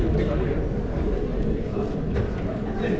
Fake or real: real